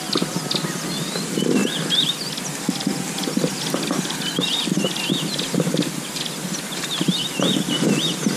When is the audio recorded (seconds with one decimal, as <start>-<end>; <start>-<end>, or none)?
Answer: 0.0-8.4